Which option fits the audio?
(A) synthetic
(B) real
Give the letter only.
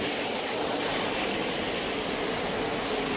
B